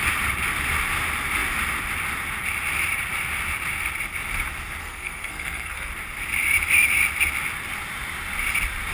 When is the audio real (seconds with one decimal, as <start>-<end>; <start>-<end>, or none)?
0.0-4.8; 5.9-8.9